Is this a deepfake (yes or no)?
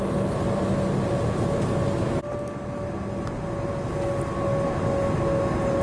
no